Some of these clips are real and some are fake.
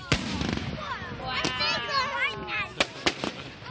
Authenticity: real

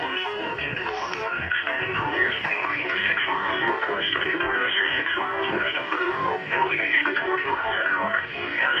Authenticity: fake